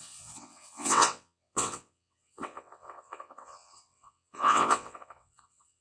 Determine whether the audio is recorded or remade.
remade